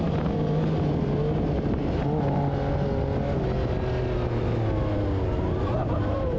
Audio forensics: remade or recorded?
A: recorded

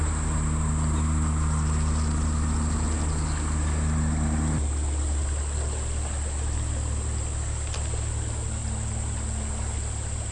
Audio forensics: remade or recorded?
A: recorded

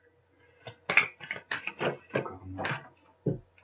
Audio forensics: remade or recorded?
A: recorded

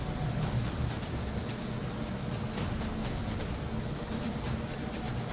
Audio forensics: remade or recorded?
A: recorded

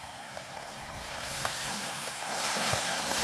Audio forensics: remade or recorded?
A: remade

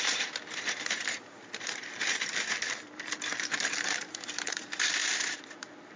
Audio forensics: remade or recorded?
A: remade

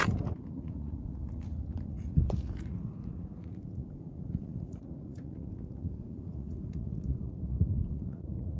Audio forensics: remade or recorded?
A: remade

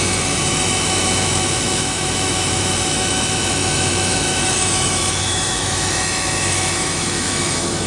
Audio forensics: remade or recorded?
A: remade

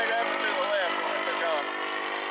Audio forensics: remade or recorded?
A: recorded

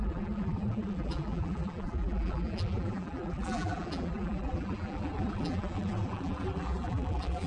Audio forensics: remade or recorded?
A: remade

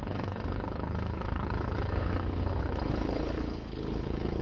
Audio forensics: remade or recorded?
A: remade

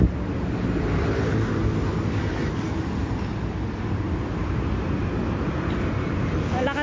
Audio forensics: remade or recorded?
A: recorded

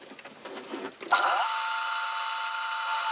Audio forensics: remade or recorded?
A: recorded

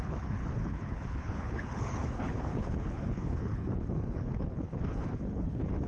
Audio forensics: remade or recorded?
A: remade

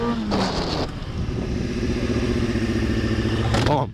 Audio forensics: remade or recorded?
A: recorded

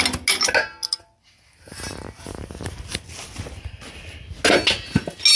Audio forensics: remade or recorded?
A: recorded